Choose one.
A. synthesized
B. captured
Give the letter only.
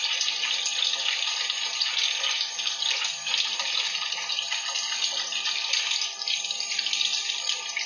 B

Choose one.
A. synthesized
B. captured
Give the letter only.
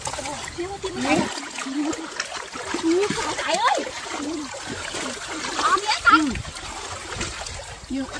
B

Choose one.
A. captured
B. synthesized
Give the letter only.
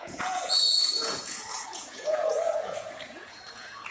B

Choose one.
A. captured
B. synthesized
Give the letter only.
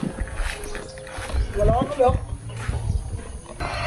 A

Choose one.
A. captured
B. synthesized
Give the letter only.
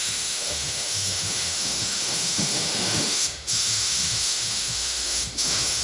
B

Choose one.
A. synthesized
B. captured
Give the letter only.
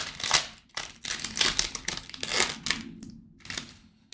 B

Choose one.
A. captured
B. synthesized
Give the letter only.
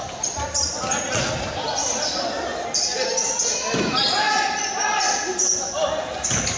A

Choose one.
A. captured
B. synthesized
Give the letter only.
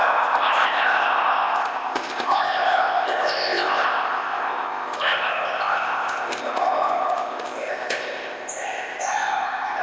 B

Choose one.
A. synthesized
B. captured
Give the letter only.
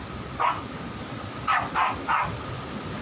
B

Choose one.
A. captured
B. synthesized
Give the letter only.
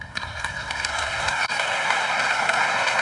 B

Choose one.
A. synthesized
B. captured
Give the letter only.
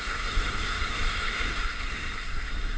A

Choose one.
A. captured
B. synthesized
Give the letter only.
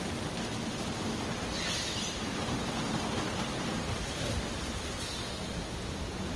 A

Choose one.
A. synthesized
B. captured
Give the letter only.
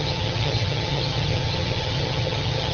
A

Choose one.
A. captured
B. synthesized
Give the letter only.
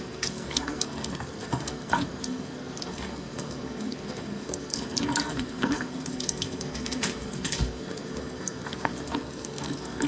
B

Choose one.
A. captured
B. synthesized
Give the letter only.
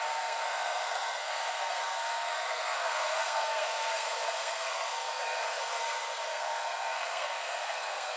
B